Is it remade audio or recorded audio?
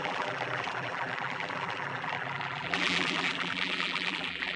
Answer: remade